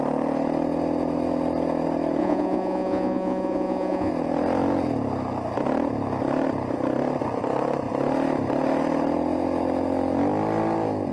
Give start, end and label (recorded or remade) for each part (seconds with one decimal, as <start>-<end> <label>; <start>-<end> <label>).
0.0-2.2 recorded; 2.2-4.1 remade; 4.1-11.1 recorded